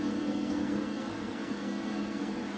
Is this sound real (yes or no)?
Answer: no